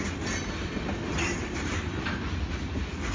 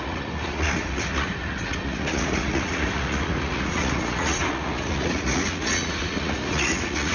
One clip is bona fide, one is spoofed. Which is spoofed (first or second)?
second